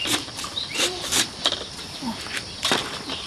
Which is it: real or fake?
fake